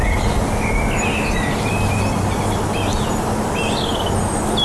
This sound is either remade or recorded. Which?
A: recorded